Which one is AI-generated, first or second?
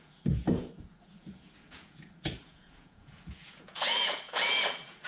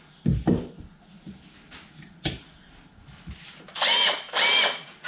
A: first